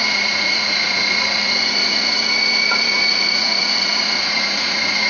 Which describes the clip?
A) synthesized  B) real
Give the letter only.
A